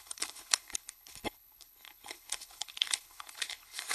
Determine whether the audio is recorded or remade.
remade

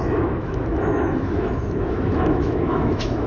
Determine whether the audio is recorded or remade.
remade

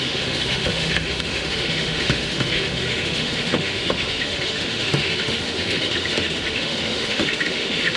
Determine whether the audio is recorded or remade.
remade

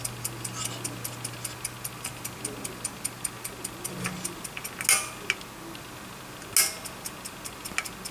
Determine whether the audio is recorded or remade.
recorded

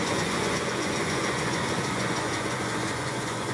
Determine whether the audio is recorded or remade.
remade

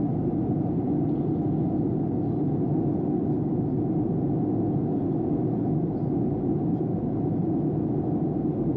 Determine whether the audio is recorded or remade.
recorded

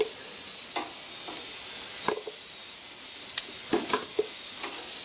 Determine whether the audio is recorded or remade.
recorded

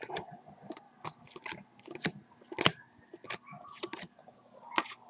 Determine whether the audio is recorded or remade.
recorded